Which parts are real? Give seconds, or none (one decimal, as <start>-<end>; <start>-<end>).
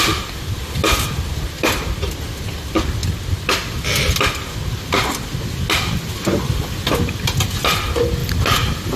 0.0-9.0